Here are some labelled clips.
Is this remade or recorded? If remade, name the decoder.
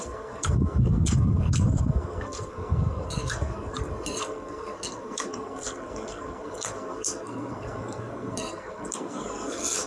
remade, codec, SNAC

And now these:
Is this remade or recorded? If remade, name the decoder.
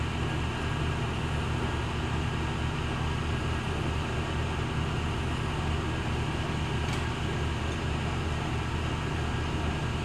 recorded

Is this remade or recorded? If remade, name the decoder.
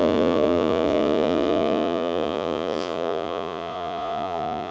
remade, vocoder, Vocos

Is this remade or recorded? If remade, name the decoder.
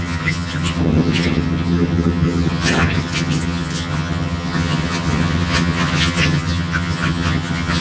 remade, vocoder, HiFi-GAN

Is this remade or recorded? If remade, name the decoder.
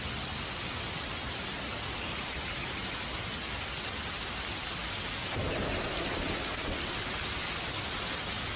recorded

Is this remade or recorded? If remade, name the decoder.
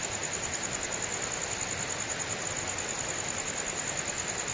recorded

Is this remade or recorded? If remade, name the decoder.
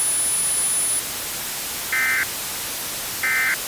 recorded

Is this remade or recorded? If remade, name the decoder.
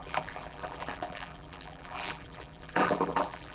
remade, vocoder, BigVGAN v2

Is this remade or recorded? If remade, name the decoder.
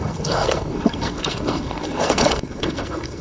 remade, codec, SNAC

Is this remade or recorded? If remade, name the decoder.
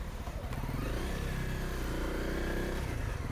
recorded